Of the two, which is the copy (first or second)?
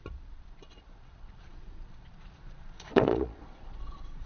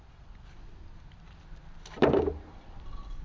first